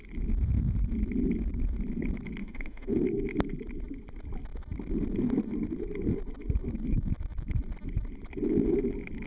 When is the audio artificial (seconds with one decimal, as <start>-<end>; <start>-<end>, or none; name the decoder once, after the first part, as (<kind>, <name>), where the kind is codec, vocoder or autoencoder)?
2.4-2.9 (autoencoder, DAC-VAE)